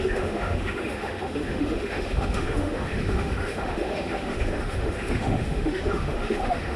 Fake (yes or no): yes